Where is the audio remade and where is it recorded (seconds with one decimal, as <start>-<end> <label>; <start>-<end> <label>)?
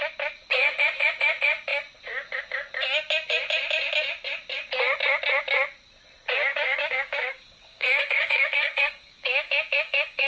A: 0.0-6.5 recorded; 6.5-10.3 remade